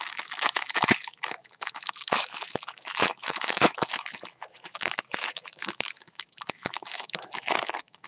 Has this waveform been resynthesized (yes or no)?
yes